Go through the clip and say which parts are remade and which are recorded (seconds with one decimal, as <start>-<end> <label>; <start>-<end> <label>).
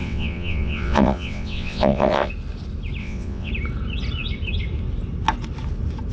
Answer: 0.0-2.3 remade; 2.3-3.0 recorded; 3.0-3.5 remade; 3.5-6.1 recorded